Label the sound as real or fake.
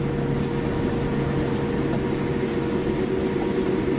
real